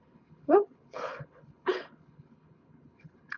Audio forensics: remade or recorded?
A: remade